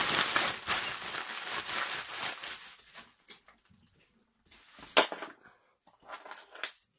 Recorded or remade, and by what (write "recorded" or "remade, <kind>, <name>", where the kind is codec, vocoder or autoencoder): recorded